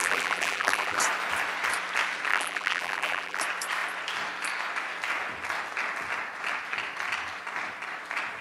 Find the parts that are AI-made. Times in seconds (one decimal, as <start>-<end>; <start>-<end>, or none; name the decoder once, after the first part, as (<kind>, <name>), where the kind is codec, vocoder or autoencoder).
0.0-1.0 (vocoder, BigVGAN v2); 2.3-3.4